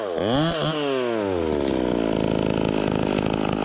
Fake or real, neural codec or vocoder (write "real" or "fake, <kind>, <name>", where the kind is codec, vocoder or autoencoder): real